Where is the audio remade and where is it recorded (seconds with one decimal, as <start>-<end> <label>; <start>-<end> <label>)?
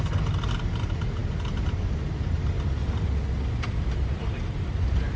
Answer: 0.0-5.2 recorded